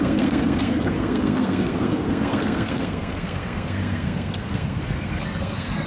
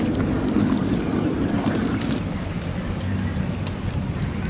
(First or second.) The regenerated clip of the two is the first